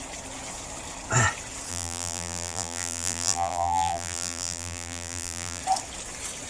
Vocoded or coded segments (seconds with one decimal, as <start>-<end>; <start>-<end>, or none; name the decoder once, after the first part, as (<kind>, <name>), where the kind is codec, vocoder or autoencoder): 1.7-5.6 (vocoder, BigVGAN v2)